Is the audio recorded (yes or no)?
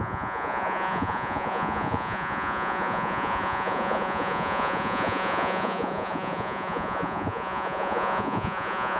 no